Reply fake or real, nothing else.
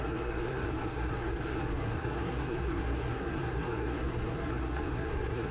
fake